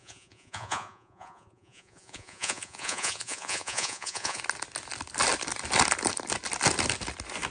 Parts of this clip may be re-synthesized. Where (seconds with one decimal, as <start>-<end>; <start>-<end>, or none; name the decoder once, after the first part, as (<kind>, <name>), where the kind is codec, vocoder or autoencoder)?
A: 0.0-4.4 (vocoder, Vocos)